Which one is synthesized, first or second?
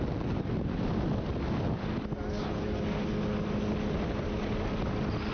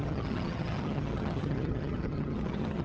second